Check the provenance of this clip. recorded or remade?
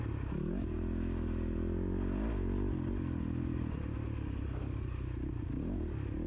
recorded